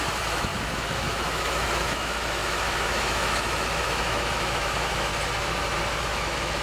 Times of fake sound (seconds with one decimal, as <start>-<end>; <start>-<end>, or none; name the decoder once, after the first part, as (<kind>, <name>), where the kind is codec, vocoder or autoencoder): 0.0-5.1 (autoencoder, DAC-VAE); 6.0-6.6